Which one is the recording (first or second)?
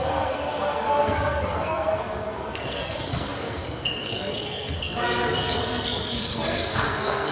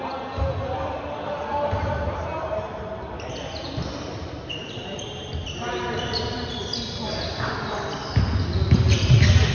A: second